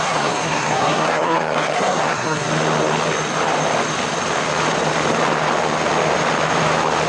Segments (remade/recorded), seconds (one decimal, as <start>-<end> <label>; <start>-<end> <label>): 0.0-2.5 remade; 2.5-7.1 recorded